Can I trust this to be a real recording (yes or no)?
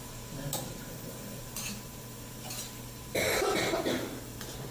no